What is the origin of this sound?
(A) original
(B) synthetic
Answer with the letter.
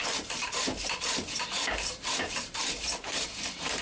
B